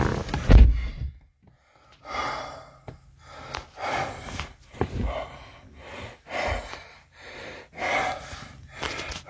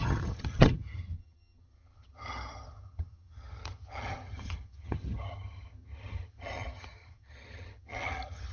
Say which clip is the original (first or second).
first